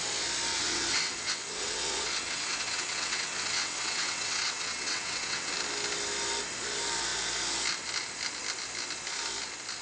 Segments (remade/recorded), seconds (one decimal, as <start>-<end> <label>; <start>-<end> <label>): 0.0-0.5 recorded; 0.5-5.5 remade; 5.5-9.8 recorded